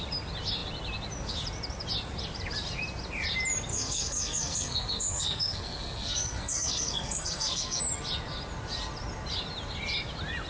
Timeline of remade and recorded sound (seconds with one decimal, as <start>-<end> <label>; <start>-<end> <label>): 0.0-3.7 recorded; 3.7-7.8 remade; 7.8-10.5 recorded